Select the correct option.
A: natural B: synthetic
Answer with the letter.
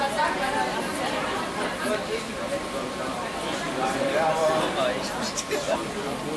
A